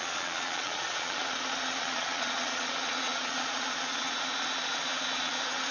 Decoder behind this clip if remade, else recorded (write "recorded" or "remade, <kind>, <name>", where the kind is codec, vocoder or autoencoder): remade, vocoder, Vocos